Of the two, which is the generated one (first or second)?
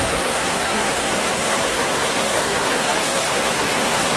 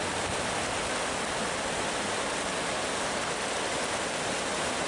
first